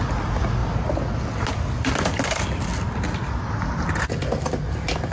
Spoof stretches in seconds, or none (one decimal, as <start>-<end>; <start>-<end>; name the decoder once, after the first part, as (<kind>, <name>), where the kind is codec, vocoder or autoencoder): none